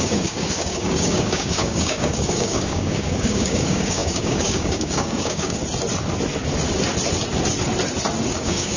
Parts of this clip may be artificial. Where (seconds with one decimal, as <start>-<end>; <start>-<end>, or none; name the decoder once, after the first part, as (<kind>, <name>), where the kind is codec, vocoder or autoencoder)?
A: 0.0-5.6 (codec, DAC); 8.3-8.8